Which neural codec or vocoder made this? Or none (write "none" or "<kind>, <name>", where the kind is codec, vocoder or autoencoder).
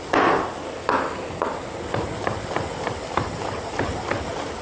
none